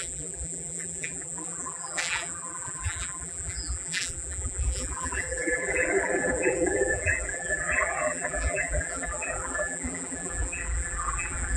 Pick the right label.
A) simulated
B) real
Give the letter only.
A